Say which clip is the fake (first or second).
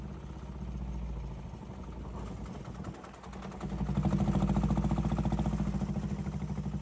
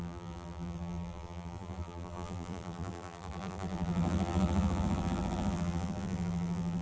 second